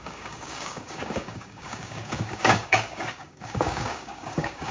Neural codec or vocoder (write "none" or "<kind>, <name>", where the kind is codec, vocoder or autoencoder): codec, DAC